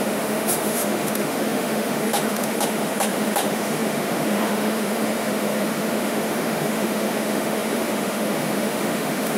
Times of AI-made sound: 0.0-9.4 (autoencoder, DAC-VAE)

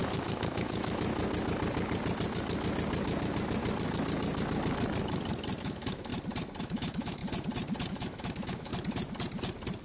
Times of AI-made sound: 0.0-1.1 (autoencoder, DAC-VAE); 5.6-6.1; 6.6-7.2; 7.9-8.7

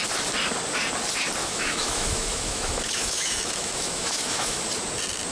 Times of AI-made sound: 1.4-4.6 (autoencoder, DAC-VAE)

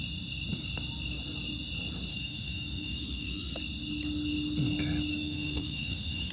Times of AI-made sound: 2.1-3.6 (autoencoder, DAC-VAE); 5.1-6.3

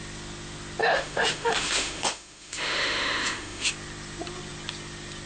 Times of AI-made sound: 0.8-3.7 (autoencoder, DAC-VAE)